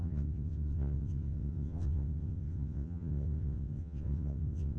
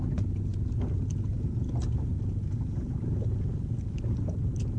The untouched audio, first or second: second